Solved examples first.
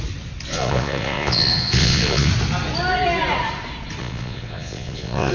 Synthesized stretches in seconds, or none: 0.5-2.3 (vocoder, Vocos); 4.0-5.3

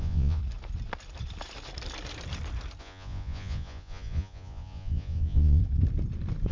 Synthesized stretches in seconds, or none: 0.0-0.4 (vocoder, Vocos); 2.8-5.6

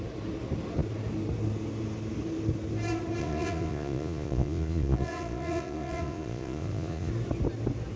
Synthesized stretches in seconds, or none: 3.2-7.1 (vocoder, Vocos)